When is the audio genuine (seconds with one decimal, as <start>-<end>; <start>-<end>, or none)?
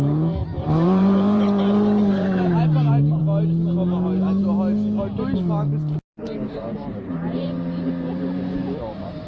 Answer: 0.0-0.4; 3.2-6.1